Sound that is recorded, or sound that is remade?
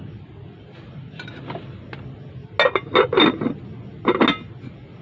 recorded